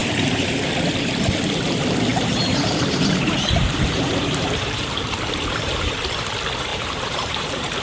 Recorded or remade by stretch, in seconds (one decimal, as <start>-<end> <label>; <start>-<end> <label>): 0.0-0.6 remade; 0.6-2.1 recorded; 2.1-6.2 remade; 6.2-6.7 recorded; 6.7-7.8 remade